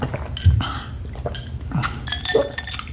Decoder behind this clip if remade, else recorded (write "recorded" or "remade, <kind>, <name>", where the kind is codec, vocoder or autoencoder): recorded